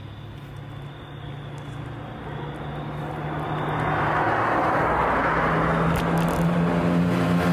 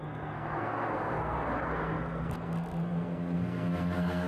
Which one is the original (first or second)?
first